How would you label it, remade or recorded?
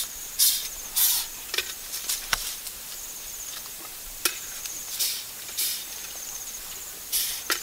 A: remade